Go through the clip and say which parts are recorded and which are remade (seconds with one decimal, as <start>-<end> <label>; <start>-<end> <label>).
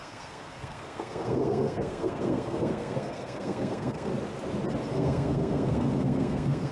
0.0-4.1 remade; 4.1-4.9 recorded; 4.9-6.7 remade